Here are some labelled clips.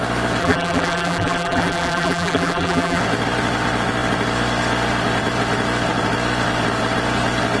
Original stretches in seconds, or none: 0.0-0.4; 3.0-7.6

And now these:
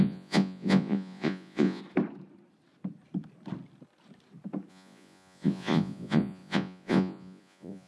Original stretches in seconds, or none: 1.8-4.7

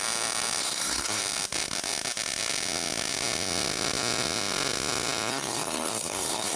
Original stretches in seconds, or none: 0.0-0.6; 1.2-5.3

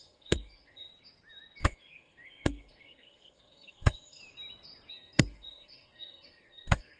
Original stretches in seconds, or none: 0.9-1.6; 4.2-4.9

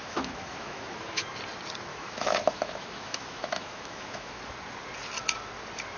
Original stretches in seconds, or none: 1.2-1.9; 4.4-6.0

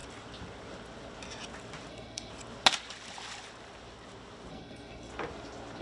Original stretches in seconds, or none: 0.0-1.9; 2.3-4.5; 5.1-5.8